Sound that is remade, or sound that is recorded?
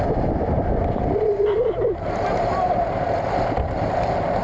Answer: recorded